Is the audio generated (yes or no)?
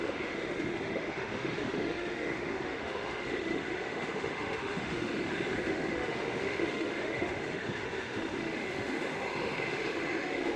yes